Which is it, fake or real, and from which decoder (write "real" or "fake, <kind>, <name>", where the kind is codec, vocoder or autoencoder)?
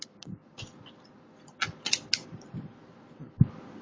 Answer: real